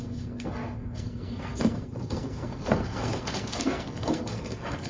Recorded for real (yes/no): no